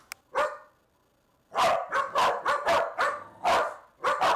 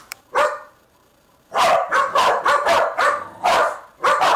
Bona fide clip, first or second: first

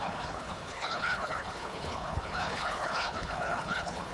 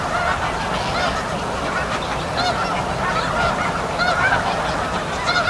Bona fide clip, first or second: second